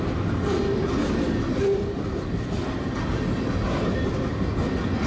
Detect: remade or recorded recorded